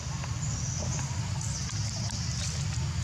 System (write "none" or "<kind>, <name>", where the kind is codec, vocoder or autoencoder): none